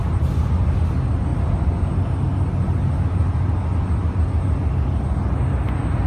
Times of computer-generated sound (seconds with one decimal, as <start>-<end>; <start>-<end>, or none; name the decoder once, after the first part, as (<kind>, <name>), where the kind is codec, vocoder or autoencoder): none